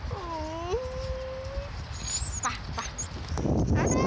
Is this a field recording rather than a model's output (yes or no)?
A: yes